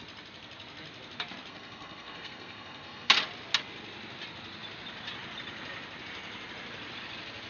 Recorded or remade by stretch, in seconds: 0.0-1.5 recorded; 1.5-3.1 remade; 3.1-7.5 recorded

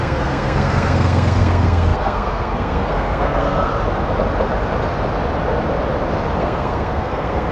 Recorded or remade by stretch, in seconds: 0.0-3.7 remade; 3.7-6.4 recorded; 6.4-7.5 remade

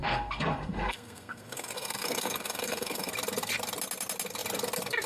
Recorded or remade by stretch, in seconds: 0.0-3.1 remade; 3.1-5.1 recorded

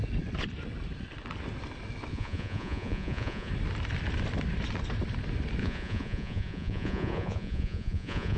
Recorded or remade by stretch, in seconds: 0.0-2.1 recorded; 2.1-3.5 remade; 3.5-5.6 recorded; 5.6-8.4 remade

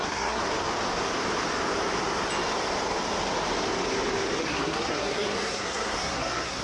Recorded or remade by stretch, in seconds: 0.0-0.4 remade; 0.4-4.4 recorded; 4.4-6.6 remade